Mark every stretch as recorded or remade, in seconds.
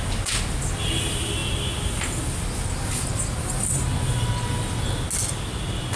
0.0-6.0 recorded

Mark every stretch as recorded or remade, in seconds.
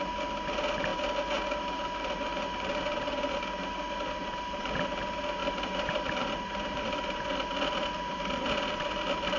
0.0-5.4 recorded; 5.4-9.4 remade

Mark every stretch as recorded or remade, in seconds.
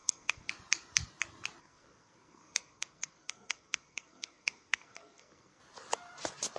0.0-0.5 remade; 0.5-1.6 recorded; 1.6-5.6 remade; 5.6-6.6 recorded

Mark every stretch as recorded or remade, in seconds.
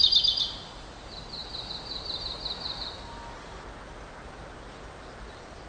0.0-5.7 recorded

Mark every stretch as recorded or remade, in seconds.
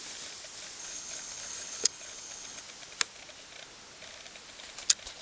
0.0-0.8 recorded; 0.8-2.6 remade; 2.6-5.2 recorded